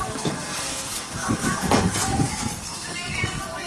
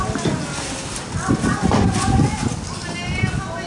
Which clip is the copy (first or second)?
first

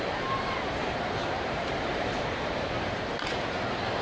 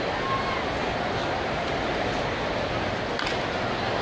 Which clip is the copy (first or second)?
first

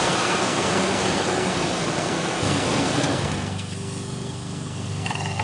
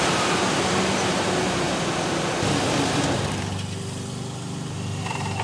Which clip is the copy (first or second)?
first